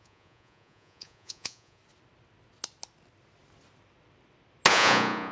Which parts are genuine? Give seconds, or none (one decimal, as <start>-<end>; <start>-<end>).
1.8-4.7